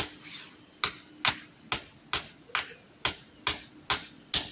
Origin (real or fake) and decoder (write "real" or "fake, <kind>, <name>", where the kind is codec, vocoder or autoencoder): real